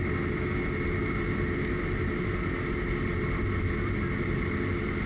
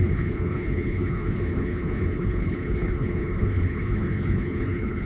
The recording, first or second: first